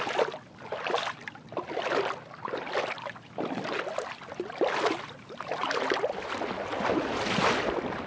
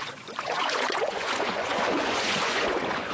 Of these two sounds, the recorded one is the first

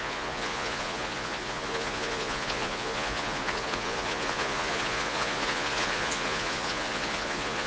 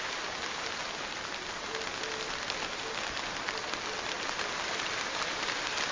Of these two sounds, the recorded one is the second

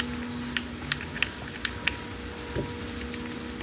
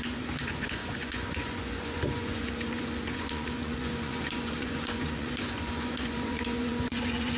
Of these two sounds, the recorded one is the first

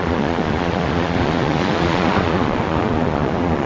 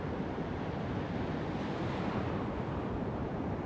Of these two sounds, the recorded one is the second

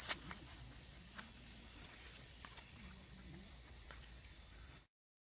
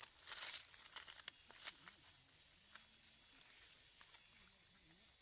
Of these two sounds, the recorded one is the second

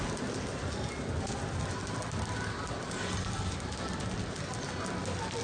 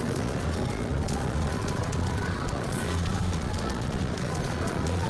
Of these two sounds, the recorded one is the first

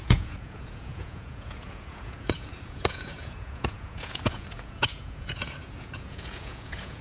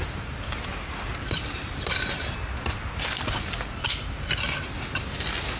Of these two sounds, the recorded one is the second